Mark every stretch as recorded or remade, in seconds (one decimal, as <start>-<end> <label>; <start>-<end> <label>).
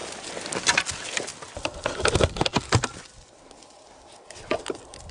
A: 0.0-5.1 recorded